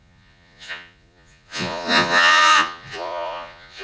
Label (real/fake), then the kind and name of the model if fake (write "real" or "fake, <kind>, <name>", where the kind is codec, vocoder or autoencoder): fake, vocoder, Vocos